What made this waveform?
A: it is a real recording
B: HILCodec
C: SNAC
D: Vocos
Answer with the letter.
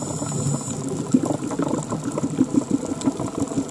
A